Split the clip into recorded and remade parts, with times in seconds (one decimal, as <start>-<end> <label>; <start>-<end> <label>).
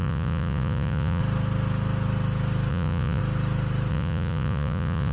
0.0-1.2 remade; 1.2-2.7 recorded; 2.7-3.2 remade; 3.2-3.9 recorded; 3.9-5.1 remade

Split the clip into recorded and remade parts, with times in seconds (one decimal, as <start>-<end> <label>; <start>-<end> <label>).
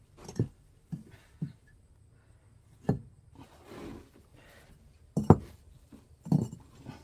0.0-4.3 recorded; 4.3-5.5 remade; 5.5-7.0 recorded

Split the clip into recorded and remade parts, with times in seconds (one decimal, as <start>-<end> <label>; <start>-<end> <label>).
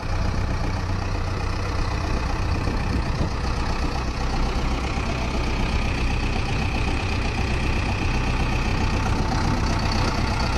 0.0-8.7 remade; 8.7-10.1 recorded; 10.1-10.6 remade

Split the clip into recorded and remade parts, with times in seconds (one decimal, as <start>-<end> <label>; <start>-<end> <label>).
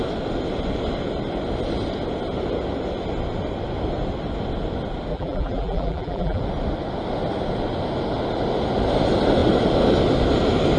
0.0-5.1 recorded; 5.1-6.4 remade; 6.4-10.8 recorded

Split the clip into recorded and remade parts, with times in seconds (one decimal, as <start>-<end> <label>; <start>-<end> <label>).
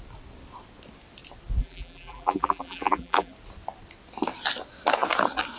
0.0-1.6 recorded; 1.6-3.3 remade; 3.3-5.6 recorded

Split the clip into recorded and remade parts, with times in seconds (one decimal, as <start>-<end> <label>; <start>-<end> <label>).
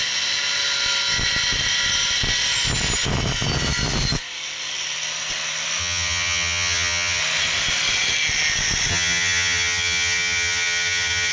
0.0-5.8 recorded; 5.8-7.2 remade; 7.2-8.9 recorded; 8.9-11.3 remade